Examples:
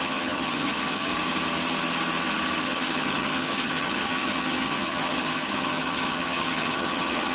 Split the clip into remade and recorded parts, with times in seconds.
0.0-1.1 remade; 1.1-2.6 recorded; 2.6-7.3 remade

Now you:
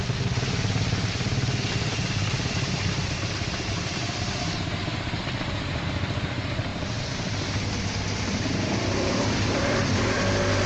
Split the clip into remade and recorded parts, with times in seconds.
0.0-4.9 remade; 4.9-5.4 recorded; 5.4-6.7 remade; 6.7-7.7 recorded; 7.7-10.7 remade

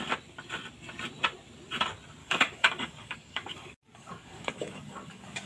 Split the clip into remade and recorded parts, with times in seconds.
0.0-2.2 recorded; 2.2-5.5 remade

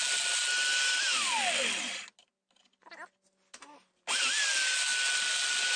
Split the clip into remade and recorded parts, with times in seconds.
0.0-5.8 recorded

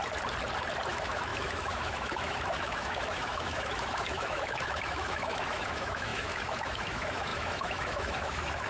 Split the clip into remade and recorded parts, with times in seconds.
0.0-0.9 recorded; 0.9-8.7 remade